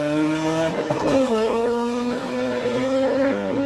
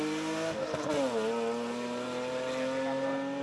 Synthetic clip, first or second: first